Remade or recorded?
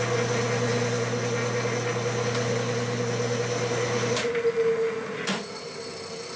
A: recorded